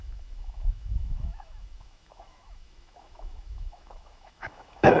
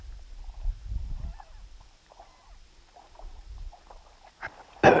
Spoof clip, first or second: first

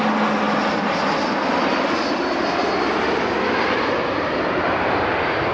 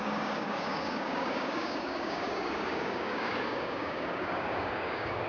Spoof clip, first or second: second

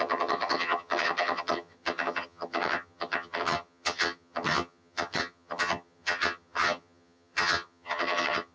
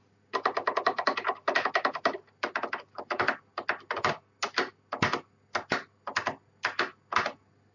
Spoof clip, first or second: first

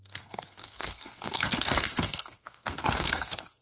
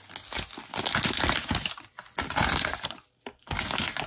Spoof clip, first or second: first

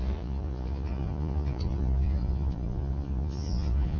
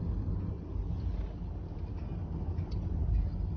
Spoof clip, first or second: first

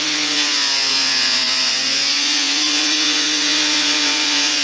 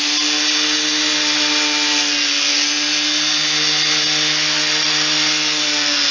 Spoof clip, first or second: first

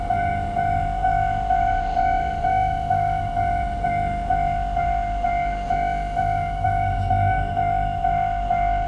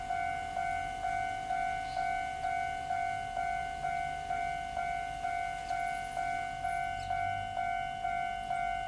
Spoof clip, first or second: first